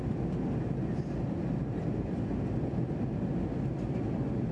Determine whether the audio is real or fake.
real